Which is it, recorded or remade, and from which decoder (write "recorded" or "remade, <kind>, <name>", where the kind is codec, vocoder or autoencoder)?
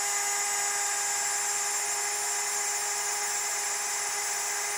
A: recorded